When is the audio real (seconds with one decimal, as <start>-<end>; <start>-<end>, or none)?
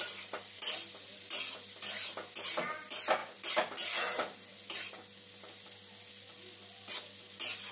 0.0-7.7